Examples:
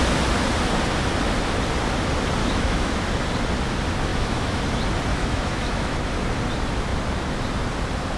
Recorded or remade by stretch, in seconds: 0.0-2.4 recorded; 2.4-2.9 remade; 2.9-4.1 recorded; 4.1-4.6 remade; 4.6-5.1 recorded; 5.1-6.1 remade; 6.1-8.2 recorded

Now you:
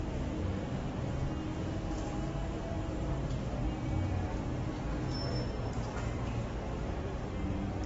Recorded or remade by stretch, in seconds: 0.0-7.9 recorded

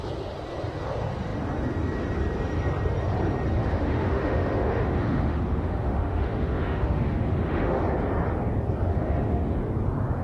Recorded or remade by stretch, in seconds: 0.0-3.6 recorded; 3.6-7.8 remade; 7.8-8.9 recorded; 8.9-9.5 remade; 9.5-10.2 recorded

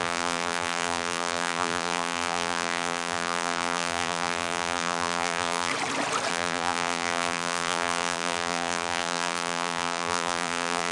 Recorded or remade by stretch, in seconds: 0.0-5.7 remade; 5.7-6.3 recorded; 6.3-10.9 remade

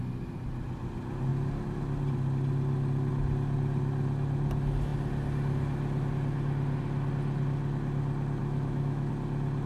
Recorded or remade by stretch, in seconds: 0.0-8.4 recorded; 8.4-9.1 remade; 9.1-9.7 recorded

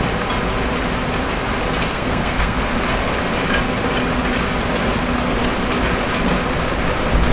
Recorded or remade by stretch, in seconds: 0.0-1.9 recorded; 1.9-2.8 remade; 2.8-7.3 recorded

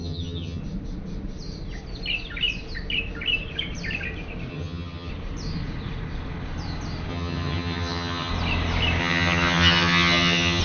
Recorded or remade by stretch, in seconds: 0.0-0.6 remade; 0.6-4.5 recorded; 4.5-5.1 remade; 5.1-7.1 recorded; 7.1-8.3 remade; 8.3-9.0 recorded; 9.0-10.6 remade

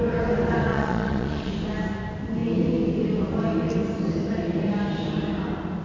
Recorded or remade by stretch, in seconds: 0.0-0.7 recorded; 0.7-1.5 remade; 1.5-5.8 recorded